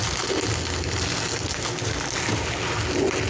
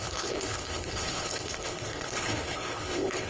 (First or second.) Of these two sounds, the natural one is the first